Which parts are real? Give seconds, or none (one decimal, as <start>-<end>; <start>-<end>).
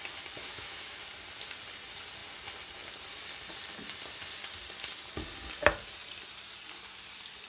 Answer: 0.0-0.4; 1.0-7.5